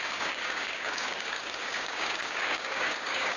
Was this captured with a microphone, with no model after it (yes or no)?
no